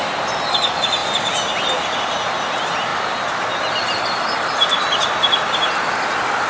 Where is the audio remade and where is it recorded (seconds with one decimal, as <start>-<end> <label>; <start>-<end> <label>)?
0.0-6.5 recorded